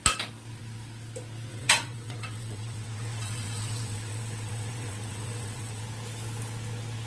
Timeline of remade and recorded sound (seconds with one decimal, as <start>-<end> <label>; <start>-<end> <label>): 0.0-1.5 recorded; 1.5-5.8 remade; 5.8-7.1 recorded